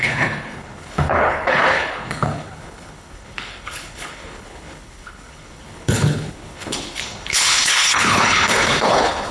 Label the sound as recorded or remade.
remade